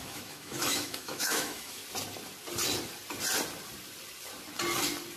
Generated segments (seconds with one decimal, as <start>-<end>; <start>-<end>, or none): 0.0-1.8